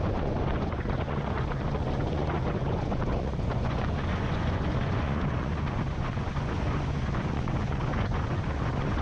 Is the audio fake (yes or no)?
yes